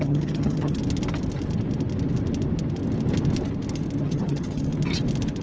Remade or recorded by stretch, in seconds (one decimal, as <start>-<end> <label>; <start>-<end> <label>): 0.0-0.8 remade; 0.8-4.0 recorded; 4.0-4.7 remade; 4.7-5.4 recorded